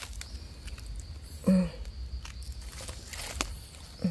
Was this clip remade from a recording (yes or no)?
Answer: no